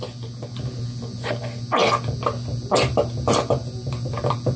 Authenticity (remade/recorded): recorded